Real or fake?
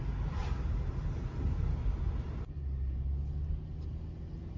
real